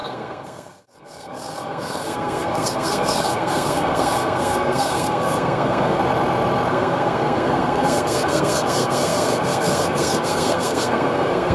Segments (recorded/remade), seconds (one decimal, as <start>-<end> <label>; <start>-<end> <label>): 0.0-6.0 remade; 6.0-6.7 recorded; 6.7-11.5 remade